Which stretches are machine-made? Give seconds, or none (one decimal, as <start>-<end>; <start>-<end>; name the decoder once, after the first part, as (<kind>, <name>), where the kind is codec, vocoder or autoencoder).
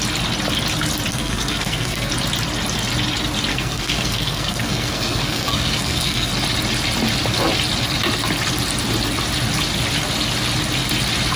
1.1-2.1 (codec, SNAC); 3.5-6.3